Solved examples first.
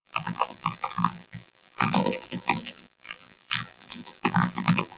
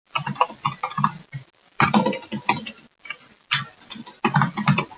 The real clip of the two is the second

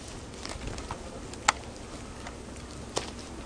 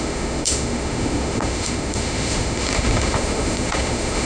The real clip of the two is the first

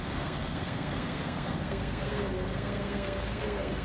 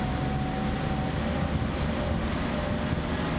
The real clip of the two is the second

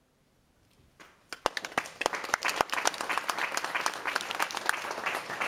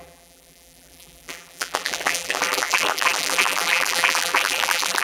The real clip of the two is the first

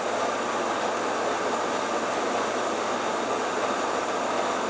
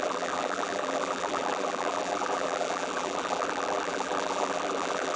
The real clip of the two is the first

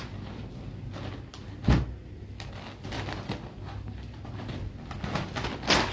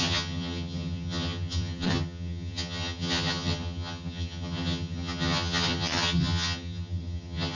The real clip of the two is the first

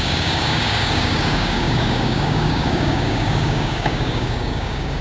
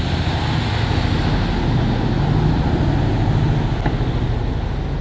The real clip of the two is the second